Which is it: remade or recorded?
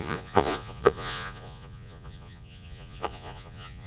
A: remade